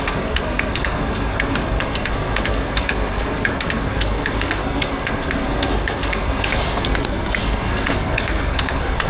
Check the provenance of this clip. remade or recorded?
remade